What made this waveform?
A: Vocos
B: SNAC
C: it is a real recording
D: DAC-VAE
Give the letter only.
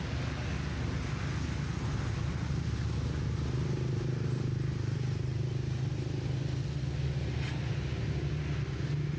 C